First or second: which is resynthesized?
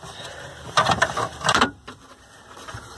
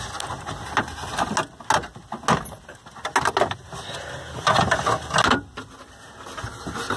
first